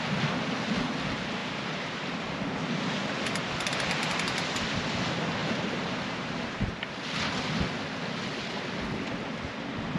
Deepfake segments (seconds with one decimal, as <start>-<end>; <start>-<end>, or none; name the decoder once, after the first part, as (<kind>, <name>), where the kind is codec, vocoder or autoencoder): 1.4-2.4 (vocoder, BigVGAN v2); 5.4-6.8